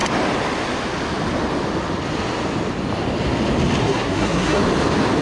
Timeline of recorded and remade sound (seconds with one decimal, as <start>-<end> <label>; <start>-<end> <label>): 0.0-3.8 recorded; 3.8-4.6 remade; 4.6-5.2 recorded

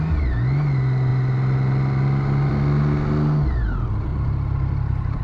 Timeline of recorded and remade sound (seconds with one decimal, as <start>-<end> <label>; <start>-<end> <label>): 0.0-4.1 recorded; 4.1-5.2 remade

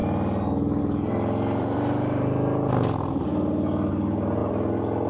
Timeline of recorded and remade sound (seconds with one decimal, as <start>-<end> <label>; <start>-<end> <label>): 0.0-0.8 recorded; 0.8-3.3 remade; 3.3-3.9 recorded; 3.9-5.1 remade

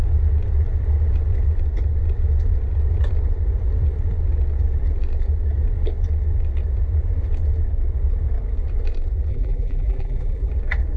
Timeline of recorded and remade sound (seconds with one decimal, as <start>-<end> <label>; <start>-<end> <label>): 0.0-9.3 recorded; 9.3-10.5 remade; 10.5-11.0 recorded

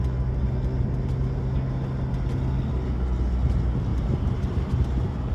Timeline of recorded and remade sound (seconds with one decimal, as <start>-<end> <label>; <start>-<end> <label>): 0.0-3.9 recorded; 3.9-4.7 remade; 4.7-5.3 recorded

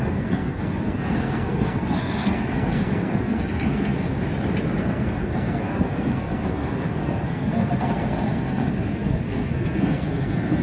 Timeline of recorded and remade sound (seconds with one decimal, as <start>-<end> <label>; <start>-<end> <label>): 0.0-4.1 remade; 4.1-4.8 recorded; 4.8-10.6 remade